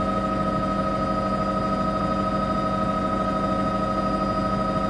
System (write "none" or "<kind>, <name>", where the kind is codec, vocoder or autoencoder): none